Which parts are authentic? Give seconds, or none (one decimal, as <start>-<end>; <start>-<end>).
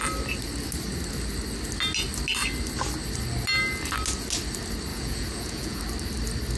0.0-4.9; 5.8-6.6